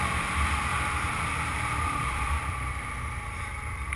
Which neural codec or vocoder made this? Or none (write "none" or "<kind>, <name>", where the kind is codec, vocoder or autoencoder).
vocoder, BigVGAN v2